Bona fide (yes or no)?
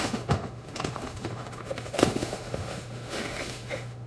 no